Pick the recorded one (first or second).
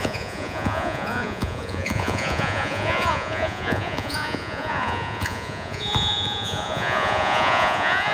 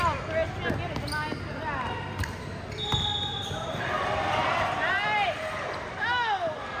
second